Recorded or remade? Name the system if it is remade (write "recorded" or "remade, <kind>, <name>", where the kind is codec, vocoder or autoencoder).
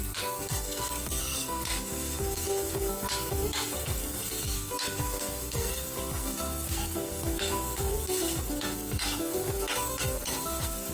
remade, codec, SNAC